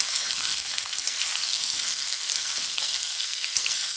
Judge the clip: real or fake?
fake